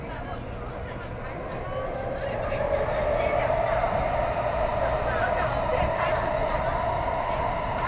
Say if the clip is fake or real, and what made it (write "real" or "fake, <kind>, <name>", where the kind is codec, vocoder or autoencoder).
real